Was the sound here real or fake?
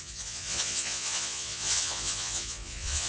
fake